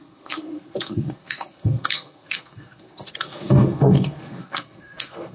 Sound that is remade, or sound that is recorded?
remade